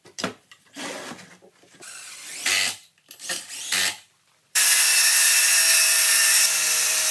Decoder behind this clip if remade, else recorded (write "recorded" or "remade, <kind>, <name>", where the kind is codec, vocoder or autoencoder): remade, vocoder, BigVGAN v2